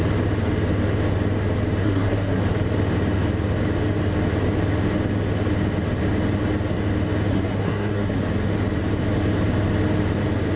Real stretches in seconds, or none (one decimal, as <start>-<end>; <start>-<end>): 0.0-1.8; 2.4-7.3; 8.2-10.6